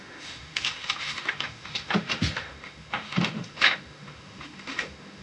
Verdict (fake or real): fake